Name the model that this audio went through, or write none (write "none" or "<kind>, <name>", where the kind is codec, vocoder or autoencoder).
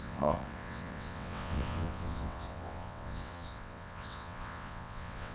vocoder, WaveNeXt